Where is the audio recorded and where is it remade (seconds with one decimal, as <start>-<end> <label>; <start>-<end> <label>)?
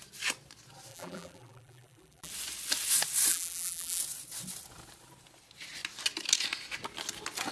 0.0-0.9 recorded; 0.9-2.3 remade; 2.3-3.3 recorded; 3.3-4.0 remade; 4.0-7.5 recorded